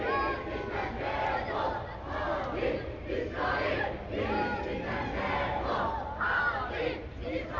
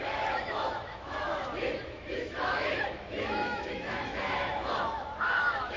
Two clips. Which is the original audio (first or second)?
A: first